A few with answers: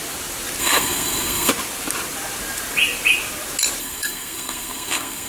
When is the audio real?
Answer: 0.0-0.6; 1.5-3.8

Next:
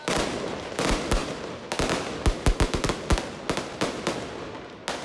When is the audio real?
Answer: 0.0-5.0

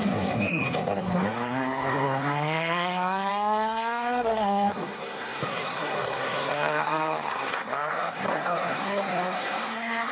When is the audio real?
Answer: none

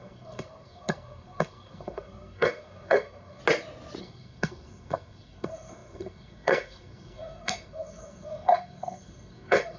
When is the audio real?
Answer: 3.4-4.0

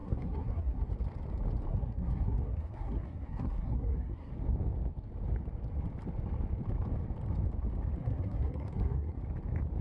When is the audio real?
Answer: 0.9-1.7; 4.3-8.0; 9.2-9.8

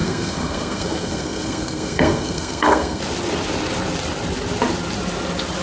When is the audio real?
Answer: 3.0-5.6

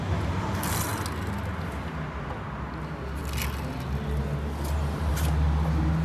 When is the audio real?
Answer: 0.0-6.0

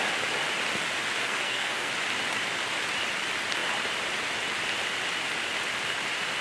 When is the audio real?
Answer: 0.0-1.2; 1.9-6.4